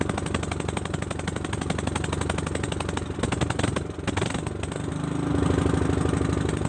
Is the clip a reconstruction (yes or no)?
no